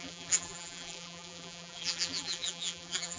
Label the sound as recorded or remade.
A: remade